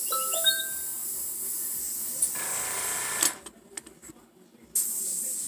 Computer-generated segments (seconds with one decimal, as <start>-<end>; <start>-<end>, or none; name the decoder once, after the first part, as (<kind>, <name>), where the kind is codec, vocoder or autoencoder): none